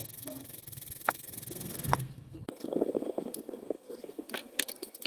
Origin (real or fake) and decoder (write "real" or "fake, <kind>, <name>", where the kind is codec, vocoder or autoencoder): fake, codec, SNAC